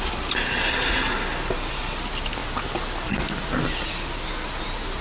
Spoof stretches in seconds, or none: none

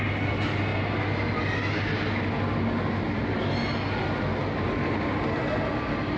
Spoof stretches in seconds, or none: none

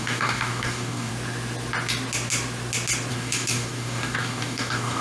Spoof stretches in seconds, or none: 0.0-1.1 (codec, DAC); 3.1-5.0

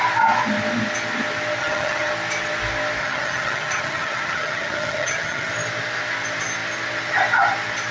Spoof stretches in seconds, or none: 1.6-2.1 (vocoder, HiFi-GAN); 3.0-5.5

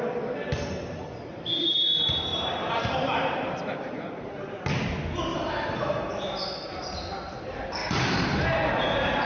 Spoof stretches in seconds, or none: 2.3-4.6 (vocoder, BigVGAN v2); 5.3-6.1; 7.8-9.2

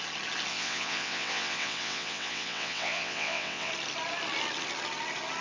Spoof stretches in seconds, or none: 0.5-3.7 (vocoder, WaveNeXt)

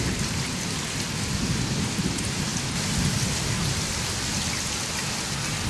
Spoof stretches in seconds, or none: none

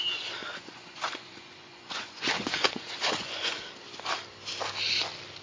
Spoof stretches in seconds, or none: 0.4-3.6 (vocoder, Vocos)